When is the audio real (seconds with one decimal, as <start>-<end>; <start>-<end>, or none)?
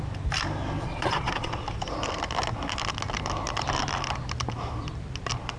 0.0-0.8; 1.5-5.6